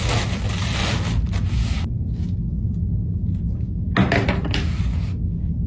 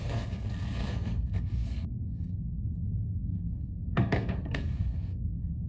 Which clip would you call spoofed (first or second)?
second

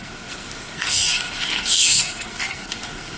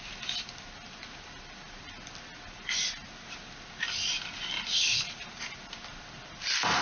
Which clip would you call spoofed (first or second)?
first